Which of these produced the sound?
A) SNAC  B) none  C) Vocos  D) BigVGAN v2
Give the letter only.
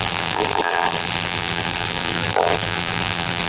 D